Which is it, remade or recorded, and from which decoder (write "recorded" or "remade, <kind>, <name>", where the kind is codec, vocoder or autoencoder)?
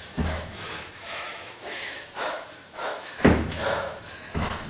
remade, autoencoder, DAC-VAE